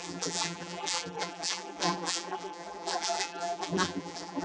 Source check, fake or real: fake